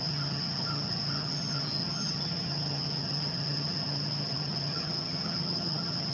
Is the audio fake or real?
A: fake